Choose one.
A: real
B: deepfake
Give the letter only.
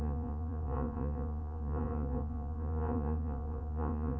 B